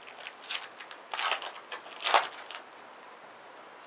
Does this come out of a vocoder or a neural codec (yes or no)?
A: no